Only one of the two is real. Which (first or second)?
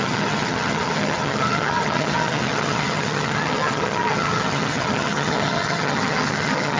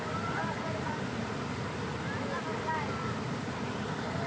second